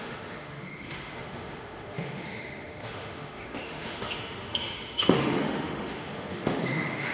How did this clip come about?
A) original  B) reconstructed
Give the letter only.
B